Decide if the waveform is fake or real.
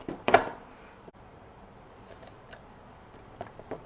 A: fake